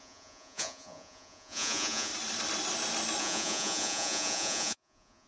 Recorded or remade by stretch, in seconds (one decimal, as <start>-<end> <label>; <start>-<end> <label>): 0.0-2.1 remade; 2.1-3.2 recorded; 3.2-5.3 remade